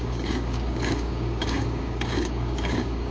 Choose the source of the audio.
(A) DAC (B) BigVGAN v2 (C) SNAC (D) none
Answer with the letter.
A